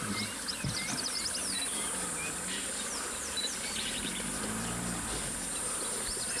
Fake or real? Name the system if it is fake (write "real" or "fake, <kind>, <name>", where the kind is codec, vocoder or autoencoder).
real